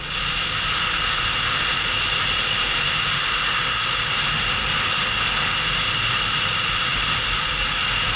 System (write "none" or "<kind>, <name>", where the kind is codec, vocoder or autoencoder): none